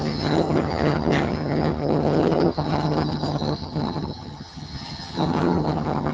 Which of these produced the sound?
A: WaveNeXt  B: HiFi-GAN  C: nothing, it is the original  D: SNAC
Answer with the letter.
B